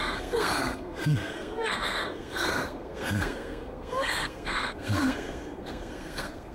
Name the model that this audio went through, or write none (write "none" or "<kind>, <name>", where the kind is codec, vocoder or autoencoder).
codec, SNAC